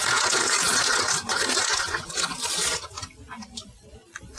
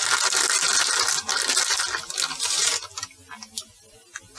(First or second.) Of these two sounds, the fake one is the first